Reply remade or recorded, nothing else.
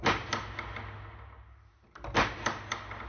recorded